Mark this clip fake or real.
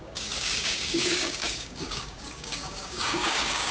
fake